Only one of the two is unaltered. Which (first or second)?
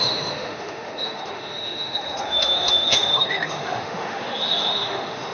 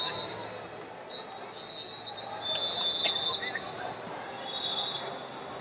second